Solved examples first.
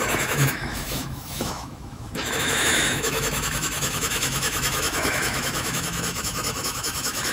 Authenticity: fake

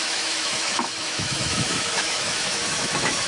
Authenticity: fake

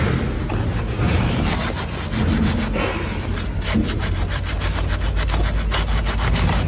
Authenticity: real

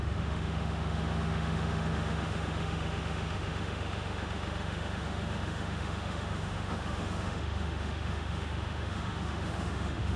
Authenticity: fake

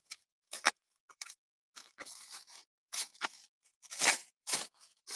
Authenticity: fake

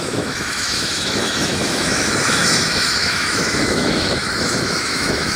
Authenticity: fake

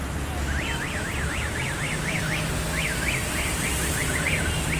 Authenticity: real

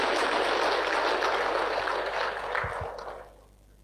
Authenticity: real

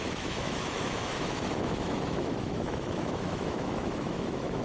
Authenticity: fake